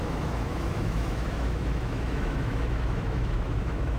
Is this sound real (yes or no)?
no